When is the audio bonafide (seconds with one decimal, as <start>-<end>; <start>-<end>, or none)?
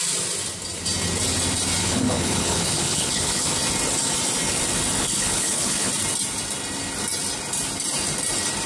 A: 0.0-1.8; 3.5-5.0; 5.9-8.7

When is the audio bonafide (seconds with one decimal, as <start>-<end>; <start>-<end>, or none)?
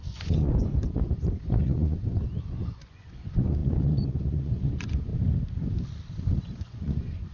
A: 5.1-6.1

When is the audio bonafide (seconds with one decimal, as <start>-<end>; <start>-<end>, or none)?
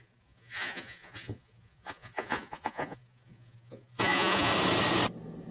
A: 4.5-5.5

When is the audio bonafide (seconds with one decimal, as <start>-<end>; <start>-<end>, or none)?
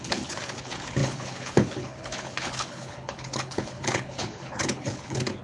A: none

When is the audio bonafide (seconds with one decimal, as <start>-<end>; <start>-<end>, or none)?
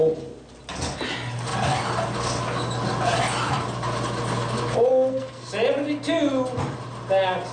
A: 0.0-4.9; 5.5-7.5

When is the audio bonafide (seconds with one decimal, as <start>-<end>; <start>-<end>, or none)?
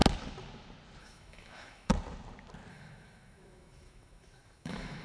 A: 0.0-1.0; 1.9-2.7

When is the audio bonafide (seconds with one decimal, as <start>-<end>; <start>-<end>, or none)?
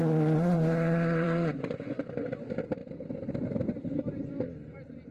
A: 1.9-5.1